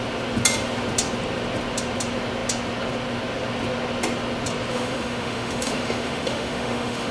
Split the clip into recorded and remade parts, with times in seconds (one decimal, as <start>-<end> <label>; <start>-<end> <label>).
0.0-4.7 recorded; 4.7-7.1 remade